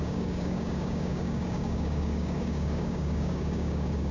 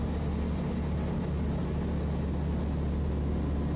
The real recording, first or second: second